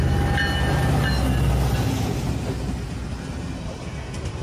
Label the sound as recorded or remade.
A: recorded